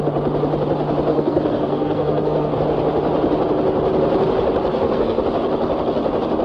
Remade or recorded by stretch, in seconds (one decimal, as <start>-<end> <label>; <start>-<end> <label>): 0.0-1.1 recorded; 1.1-2.6 remade; 2.6-4.7 recorded; 4.7-5.2 remade; 5.2-6.4 recorded